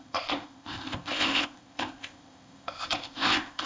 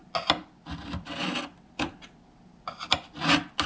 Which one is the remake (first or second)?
first